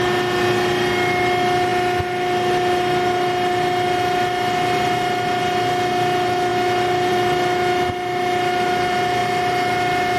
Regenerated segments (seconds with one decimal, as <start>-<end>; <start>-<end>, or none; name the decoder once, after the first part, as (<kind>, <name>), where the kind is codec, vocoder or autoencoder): none